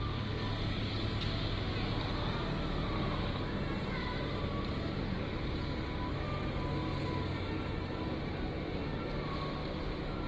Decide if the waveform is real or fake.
real